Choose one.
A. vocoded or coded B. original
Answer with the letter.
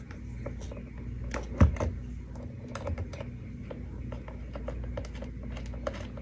B